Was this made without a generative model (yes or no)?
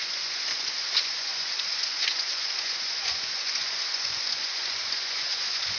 no